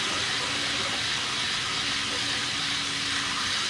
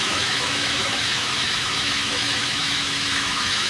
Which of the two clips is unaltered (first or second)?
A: first